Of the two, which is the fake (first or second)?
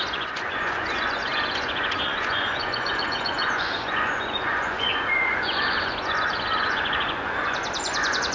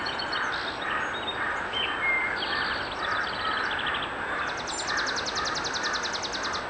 first